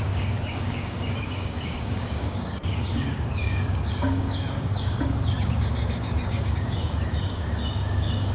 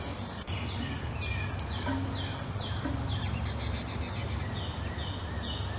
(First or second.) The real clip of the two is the second